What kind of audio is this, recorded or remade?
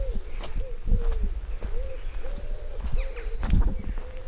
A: recorded